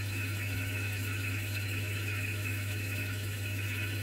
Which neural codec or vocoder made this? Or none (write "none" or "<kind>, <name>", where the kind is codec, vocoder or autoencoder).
autoencoder, DAC-VAE